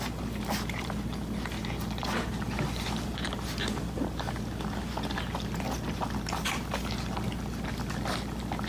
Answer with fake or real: real